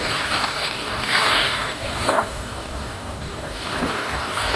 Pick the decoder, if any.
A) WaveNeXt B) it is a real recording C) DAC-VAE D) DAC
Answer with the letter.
D